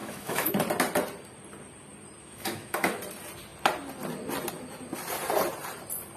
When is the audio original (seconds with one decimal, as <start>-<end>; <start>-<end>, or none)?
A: 0.5-2.2; 3.0-6.2